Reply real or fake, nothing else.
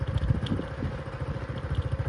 real